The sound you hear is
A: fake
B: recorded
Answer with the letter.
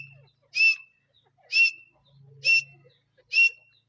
B